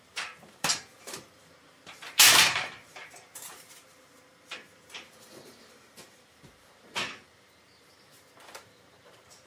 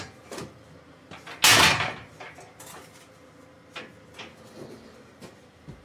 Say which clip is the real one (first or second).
second